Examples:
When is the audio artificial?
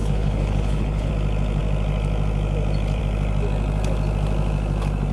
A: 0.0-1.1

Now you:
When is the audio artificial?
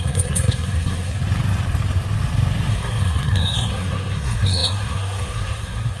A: 0.0-1.2; 2.7-6.0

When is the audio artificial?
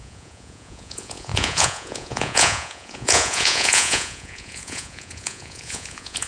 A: 0.0-6.3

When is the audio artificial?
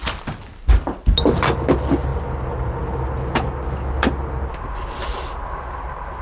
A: none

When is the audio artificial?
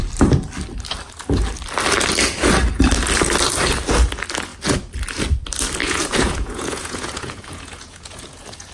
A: 5.8-8.7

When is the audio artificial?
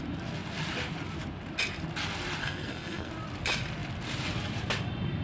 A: 2.4-3.1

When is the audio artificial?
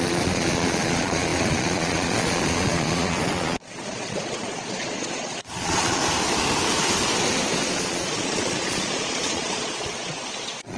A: 0.0-6.0; 7.8-10.8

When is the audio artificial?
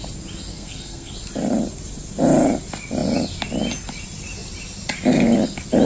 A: 0.5-1.1